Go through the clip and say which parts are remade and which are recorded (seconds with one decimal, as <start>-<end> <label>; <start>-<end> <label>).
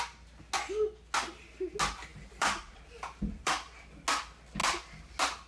0.0-2.1 recorded; 2.1-3.5 remade; 3.5-5.5 recorded